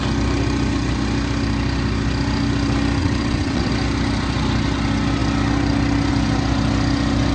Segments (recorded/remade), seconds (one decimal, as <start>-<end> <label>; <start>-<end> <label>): 0.0-3.0 recorded; 3.0-3.7 remade; 3.7-7.3 recorded